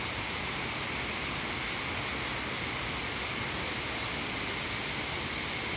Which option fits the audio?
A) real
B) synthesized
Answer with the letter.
A